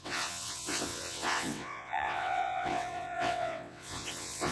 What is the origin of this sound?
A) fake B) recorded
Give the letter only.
A